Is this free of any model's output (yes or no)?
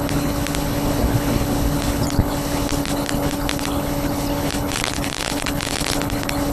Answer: no